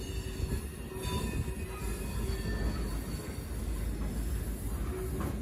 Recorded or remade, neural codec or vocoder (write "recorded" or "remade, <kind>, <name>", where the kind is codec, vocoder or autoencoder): recorded